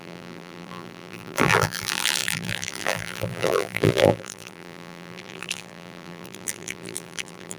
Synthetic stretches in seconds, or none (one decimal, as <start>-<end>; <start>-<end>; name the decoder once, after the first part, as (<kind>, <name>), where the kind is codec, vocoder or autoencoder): 0.0-7.6 (vocoder, BigVGAN v2)